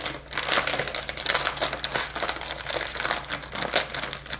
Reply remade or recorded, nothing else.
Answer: recorded